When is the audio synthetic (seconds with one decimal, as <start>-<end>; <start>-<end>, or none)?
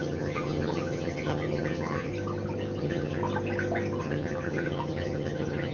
0.0-2.1; 2.8-3.2; 4.0-5.7